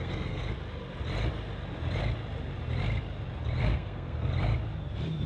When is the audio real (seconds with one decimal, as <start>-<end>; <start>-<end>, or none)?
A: 0.4-3.6; 4.3-5.3